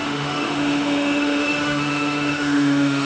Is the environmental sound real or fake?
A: fake